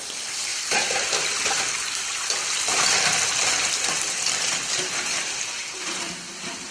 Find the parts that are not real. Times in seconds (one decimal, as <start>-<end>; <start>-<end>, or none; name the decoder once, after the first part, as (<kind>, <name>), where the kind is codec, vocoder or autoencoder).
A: 0.0-0.5 (vocoder, BigVGAN v2); 4.5-6.7